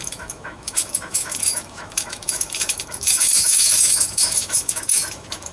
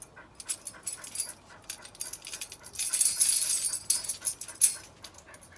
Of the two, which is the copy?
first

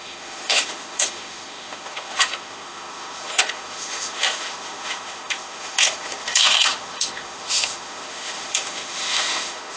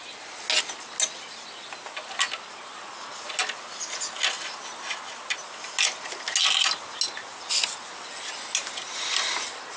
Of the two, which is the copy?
first